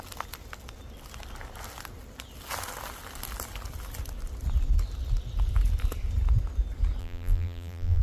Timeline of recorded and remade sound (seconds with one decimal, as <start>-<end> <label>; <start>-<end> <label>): 0.0-7.0 recorded; 7.0-8.0 remade